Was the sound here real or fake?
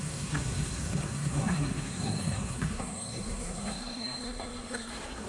fake